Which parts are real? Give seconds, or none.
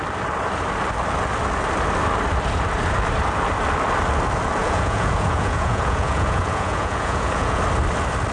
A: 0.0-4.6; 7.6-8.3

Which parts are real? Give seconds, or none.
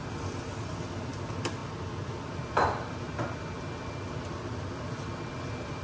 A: 0.0-5.8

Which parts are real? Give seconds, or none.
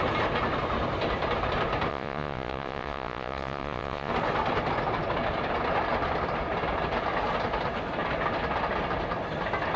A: 0.0-1.9; 4.1-9.8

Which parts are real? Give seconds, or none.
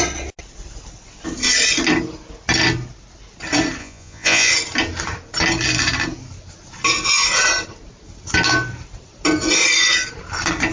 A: 0.0-3.8; 4.5-10.7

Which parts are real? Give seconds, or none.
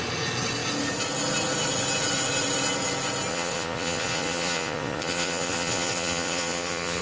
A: 0.0-3.3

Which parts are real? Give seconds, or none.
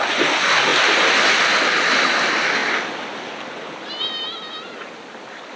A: 0.0-5.6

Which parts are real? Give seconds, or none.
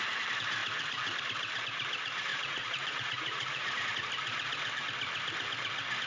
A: 0.0-2.3; 3.9-6.1